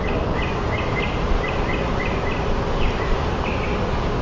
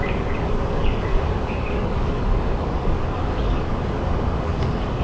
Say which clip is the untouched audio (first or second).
first